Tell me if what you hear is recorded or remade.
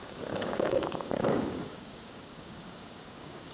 remade